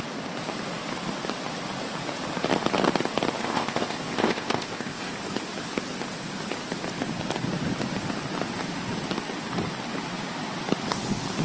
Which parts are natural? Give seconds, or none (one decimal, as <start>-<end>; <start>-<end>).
0.0-3.4; 5.0-11.4